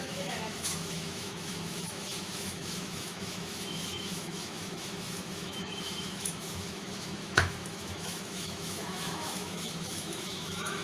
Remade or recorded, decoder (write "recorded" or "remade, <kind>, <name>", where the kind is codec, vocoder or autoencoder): remade, autoencoder, DAC-VAE